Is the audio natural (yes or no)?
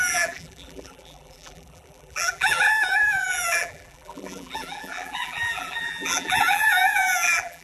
no